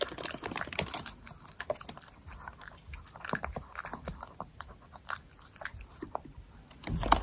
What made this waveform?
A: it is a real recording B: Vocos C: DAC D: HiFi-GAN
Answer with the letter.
A